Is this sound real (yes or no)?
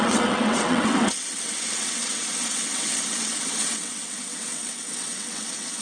no